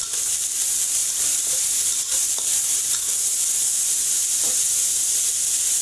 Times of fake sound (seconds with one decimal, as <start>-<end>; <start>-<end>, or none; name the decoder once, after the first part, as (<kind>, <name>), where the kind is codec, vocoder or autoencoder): 1.0-1.6 (vocoder, BigVGAN v2)